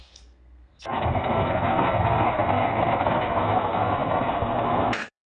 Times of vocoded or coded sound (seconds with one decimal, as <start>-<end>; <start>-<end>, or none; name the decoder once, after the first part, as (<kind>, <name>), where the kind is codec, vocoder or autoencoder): 0.0-5.3 (codec, SNAC)